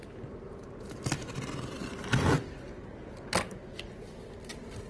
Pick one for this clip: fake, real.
real